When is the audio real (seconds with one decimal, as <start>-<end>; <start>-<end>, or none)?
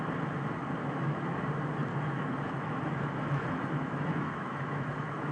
0.0-0.8; 1.4-1.9